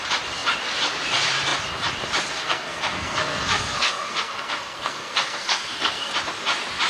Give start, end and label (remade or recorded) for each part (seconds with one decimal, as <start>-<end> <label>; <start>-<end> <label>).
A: 0.0-2.4 recorded; 2.4-6.1 remade; 6.1-6.9 recorded